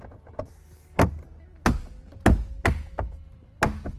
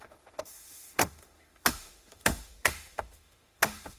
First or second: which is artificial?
second